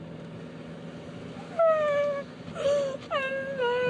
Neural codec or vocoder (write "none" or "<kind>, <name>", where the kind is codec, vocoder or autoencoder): none